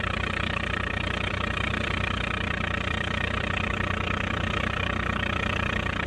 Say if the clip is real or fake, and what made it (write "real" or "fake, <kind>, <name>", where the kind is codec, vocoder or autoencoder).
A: fake, vocoder, BigVGAN v2